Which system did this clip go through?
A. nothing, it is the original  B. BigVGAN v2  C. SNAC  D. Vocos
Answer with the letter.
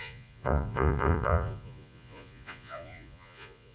D